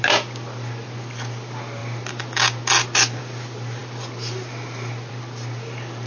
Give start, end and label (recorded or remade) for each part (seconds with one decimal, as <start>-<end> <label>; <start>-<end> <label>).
0.0-6.1 recorded

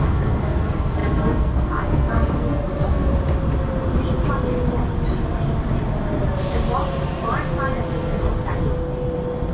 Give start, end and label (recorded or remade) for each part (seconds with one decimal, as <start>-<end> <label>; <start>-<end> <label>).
0.0-3.1 remade; 3.1-7.9 recorded; 7.9-8.3 remade; 8.3-9.5 recorded